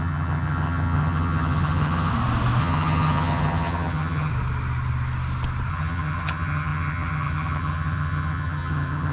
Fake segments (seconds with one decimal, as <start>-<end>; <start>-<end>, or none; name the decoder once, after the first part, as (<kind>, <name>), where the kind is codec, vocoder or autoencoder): 0.0-2.1 (vocoder, HiFi-GAN); 2.6-4.3; 5.7-9.1